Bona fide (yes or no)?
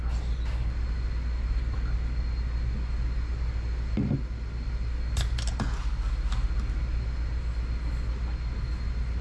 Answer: yes